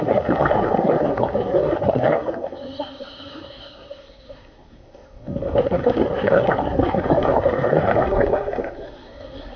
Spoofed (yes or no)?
yes